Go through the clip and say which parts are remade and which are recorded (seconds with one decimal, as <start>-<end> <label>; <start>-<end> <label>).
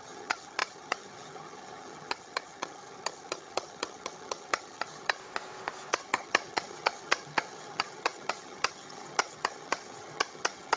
0.0-5.2 remade; 5.2-5.9 recorded; 5.9-10.8 remade